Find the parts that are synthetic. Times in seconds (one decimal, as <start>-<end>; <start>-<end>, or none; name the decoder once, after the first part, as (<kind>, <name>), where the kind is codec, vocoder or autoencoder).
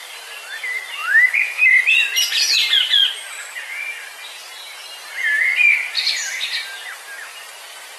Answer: 1.0-1.7 (autoencoder, DAC-VAE)